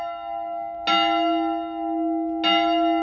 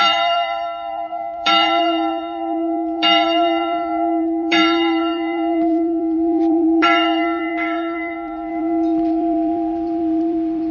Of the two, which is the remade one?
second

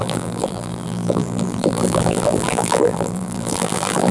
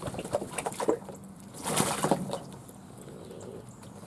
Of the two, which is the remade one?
first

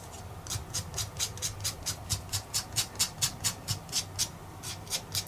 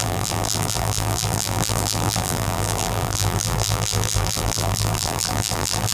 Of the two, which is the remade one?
second